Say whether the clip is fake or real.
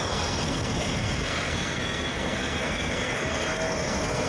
fake